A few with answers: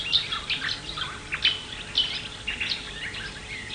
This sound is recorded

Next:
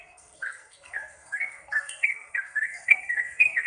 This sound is remade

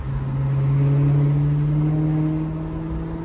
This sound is recorded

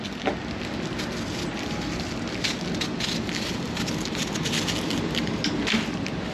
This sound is recorded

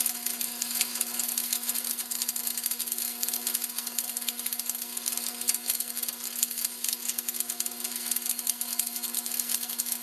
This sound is remade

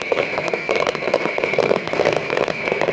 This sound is remade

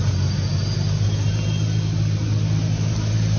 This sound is recorded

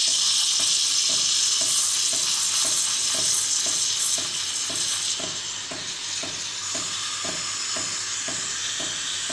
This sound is recorded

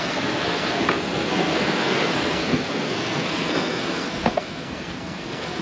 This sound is remade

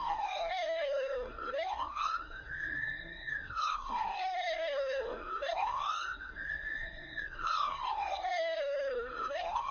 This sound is remade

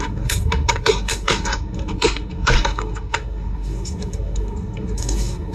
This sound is remade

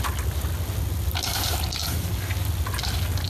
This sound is recorded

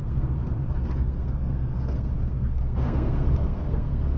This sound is remade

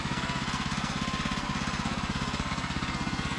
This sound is remade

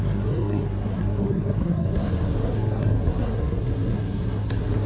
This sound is remade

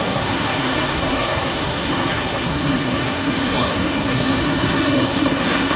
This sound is remade